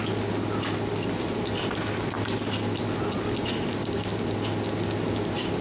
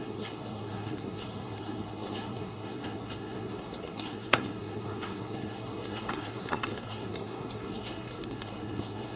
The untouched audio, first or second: first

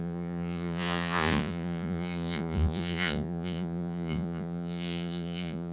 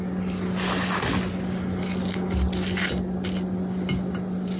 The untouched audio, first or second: second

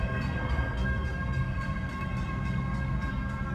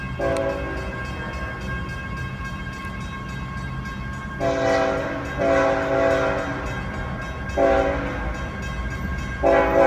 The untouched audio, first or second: second